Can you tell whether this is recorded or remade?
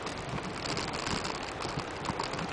recorded